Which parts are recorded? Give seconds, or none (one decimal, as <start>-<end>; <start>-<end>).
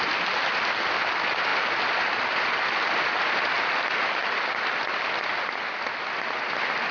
0.0-6.9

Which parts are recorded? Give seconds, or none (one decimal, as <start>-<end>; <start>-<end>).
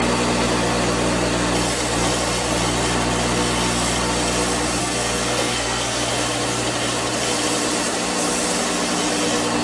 0.0-4.8; 6.1-9.6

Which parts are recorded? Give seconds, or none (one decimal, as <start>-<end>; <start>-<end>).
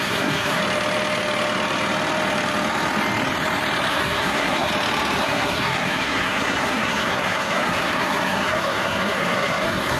0.6-3.9; 4.7-5.2